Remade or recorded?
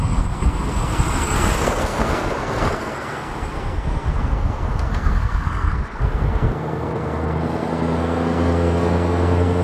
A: remade